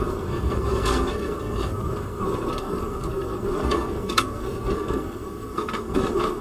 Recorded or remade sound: remade